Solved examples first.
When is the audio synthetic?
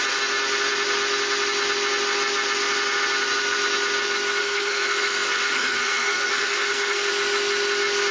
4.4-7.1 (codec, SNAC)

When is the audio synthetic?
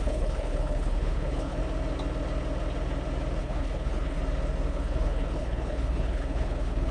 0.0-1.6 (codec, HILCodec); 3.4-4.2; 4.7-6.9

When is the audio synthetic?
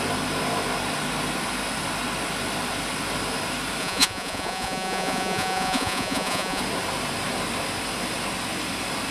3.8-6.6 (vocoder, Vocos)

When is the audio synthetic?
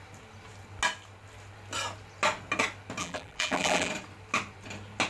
3.0-3.9 (vocoder, BigVGAN v2)